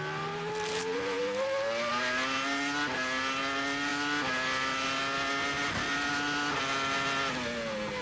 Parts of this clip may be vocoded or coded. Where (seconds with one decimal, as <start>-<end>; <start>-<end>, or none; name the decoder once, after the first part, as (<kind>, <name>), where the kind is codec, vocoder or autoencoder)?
none